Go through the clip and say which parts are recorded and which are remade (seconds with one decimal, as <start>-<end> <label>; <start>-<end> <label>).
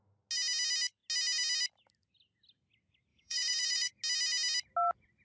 0.0-3.1 recorded; 3.1-3.9 remade; 3.9-5.2 recorded